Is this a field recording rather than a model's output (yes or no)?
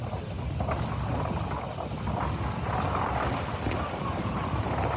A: yes